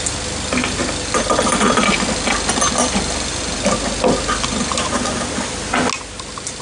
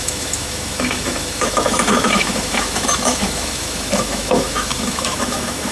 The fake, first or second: second